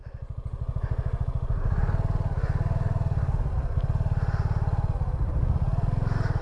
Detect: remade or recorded recorded